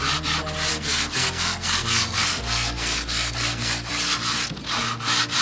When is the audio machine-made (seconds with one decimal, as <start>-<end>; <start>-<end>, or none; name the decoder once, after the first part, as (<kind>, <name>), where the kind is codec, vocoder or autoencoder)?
0.7-3.9 (codec, SNAC)